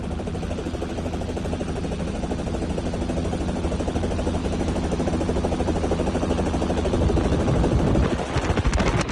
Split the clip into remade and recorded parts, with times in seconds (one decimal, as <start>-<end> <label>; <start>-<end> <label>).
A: 0.0-4.4 recorded; 4.4-5.1 remade; 5.1-9.1 recorded